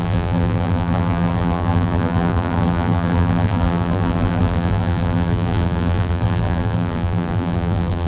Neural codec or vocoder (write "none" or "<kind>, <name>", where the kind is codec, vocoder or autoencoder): vocoder, BigVGAN v2